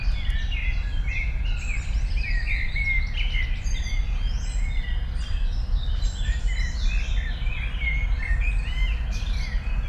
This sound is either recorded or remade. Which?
recorded